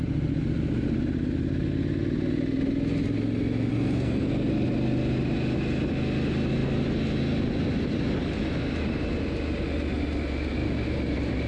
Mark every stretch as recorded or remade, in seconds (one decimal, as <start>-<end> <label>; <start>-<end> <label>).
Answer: 0.0-3.7 recorded; 3.7-4.5 remade; 4.5-11.5 recorded